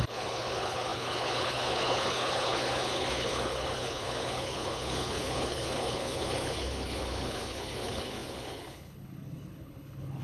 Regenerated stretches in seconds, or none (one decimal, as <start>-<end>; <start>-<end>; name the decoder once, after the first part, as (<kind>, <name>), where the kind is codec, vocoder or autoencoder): 0.0-10.2 (codec, HILCodec)